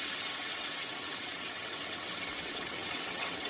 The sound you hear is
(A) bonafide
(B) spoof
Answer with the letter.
B